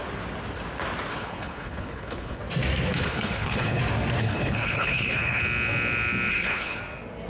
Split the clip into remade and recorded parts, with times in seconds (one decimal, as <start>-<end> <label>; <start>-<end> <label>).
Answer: 0.0-1.1 recorded; 1.1-2.4 remade; 2.4-2.9 recorded; 2.9-3.8 remade; 3.8-4.2 recorded; 4.2-5.4 remade; 5.4-6.3 recorded; 6.3-6.8 remade; 6.8-7.3 recorded